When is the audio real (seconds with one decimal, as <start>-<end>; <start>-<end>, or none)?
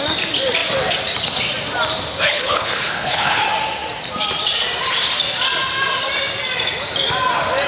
0.0-2.2; 3.4-7.7